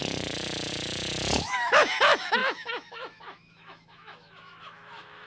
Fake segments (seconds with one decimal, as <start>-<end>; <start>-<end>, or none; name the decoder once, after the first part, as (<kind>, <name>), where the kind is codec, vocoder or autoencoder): 0.0-5.3 (autoencoder, DAC-VAE)